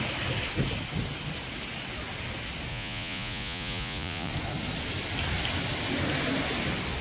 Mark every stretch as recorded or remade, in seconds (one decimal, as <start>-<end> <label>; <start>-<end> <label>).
0.0-2.7 recorded; 2.7-4.3 remade; 4.3-7.0 recorded